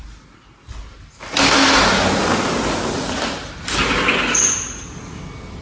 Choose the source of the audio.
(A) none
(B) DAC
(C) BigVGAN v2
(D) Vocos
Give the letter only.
A